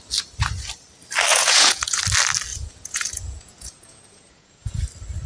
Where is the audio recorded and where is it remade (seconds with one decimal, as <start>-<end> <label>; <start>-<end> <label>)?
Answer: 0.0-1.3 recorded; 1.3-2.0 remade; 2.0-2.5 recorded; 2.5-4.8 remade; 4.8-5.3 recorded